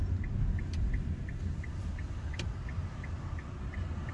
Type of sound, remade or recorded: recorded